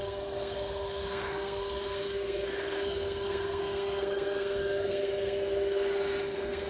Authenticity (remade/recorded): remade